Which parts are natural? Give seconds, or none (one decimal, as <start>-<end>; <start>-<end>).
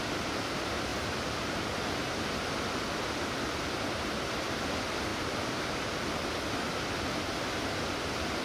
0.0-0.9; 1.5-5.1; 5.8-8.4